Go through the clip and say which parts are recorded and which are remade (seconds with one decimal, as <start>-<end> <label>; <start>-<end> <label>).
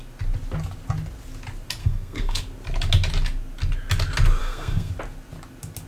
0.0-1.8 recorded; 1.8-2.4 remade; 2.4-4.4 recorded; 4.4-4.9 remade; 4.9-5.9 recorded